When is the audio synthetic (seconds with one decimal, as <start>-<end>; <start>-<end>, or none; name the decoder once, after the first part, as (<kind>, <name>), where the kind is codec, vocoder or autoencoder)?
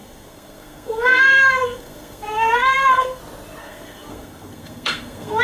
0.0-3.2 (codec, SNAC); 3.6-5.4